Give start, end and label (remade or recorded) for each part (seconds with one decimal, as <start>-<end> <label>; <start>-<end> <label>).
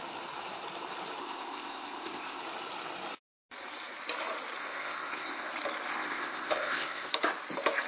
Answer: 0.0-1.2 recorded; 1.2-2.4 remade; 2.4-4.6 recorded; 4.6-5.5 remade; 5.5-5.9 recorded; 5.9-7.1 remade; 7.1-7.9 recorded